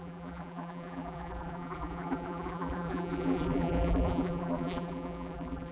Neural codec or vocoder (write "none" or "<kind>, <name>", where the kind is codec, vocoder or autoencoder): vocoder, BigVGAN v2